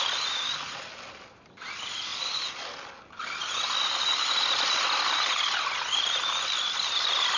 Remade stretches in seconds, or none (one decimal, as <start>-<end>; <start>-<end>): none